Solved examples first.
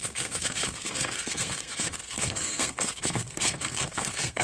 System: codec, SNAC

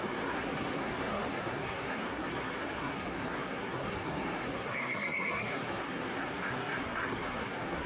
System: codec, SNAC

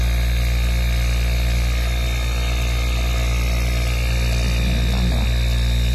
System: none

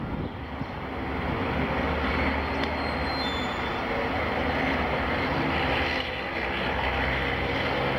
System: none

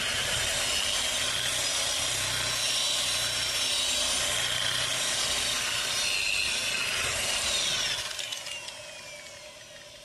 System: none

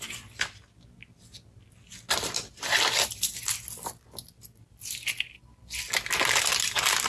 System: none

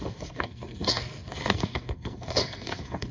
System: codec, SNAC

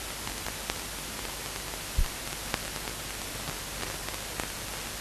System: none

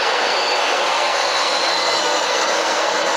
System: codec, SNAC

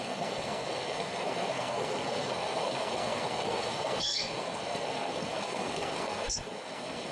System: codec, SNAC